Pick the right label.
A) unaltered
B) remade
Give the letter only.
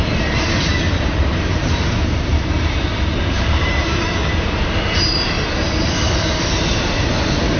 B